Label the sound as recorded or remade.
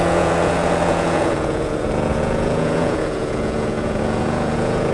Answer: remade